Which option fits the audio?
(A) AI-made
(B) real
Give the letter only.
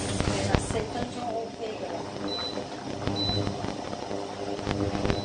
B